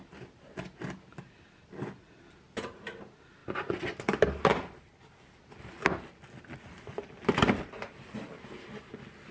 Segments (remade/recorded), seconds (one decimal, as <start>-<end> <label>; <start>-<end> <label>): 0.0-9.3 recorded